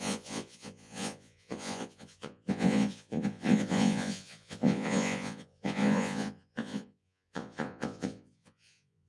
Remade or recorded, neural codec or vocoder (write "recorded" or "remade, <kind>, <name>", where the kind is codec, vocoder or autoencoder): remade, vocoder, Vocos